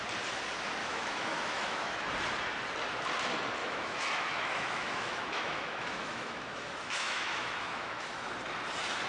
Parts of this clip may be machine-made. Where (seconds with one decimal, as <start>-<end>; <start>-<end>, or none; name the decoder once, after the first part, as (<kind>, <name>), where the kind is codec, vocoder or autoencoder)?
0.8-2.0 (autoencoder, DAC-VAE); 3.6-8.3